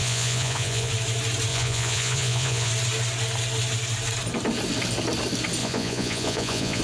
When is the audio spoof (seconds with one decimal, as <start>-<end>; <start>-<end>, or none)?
0.0-0.9; 1.5-2.7; 5.6-6.8